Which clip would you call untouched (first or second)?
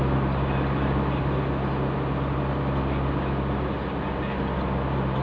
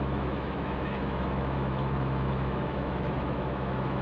first